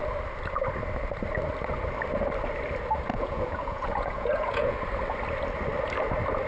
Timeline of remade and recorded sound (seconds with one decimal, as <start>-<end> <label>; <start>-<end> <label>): 0.0-3.1 recorded; 3.1-4.8 remade; 4.8-6.5 recorded